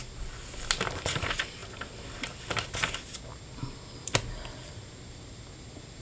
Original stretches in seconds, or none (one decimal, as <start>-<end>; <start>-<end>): 0.0-6.0

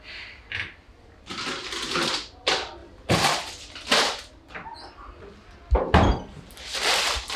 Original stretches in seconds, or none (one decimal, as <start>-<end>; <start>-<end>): 4.7-6.9

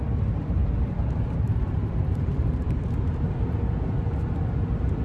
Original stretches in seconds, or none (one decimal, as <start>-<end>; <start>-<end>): 0.0-0.6; 3.6-5.0

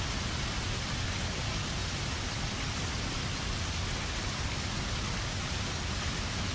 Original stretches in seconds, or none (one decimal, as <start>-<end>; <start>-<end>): 0.0-6.5

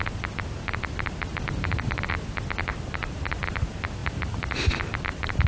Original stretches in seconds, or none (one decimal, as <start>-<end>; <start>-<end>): 0.0-1.3; 2.1-2.7; 3.5-4.0; 4.7-5.5

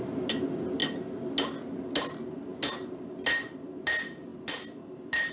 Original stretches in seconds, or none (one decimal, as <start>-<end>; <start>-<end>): 0.0-2.5; 3.0-4.3

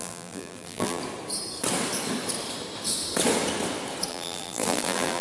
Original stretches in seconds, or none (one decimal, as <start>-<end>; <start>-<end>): 1.0-4.1